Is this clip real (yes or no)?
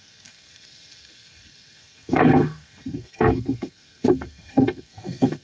no